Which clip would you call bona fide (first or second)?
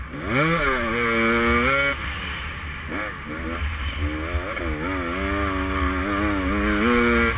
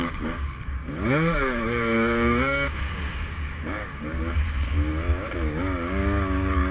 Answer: first